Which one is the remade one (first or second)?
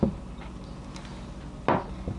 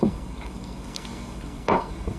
second